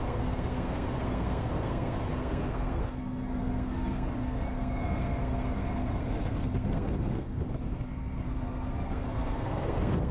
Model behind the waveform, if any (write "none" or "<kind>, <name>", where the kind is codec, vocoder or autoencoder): codec, SNAC